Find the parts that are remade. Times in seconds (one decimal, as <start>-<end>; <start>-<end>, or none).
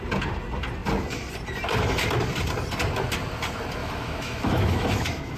3.8-5.4